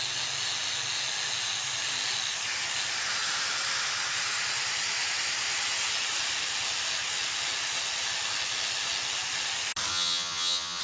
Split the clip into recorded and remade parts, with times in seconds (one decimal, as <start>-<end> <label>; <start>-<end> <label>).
0.0-9.9 recorded; 9.9-10.8 remade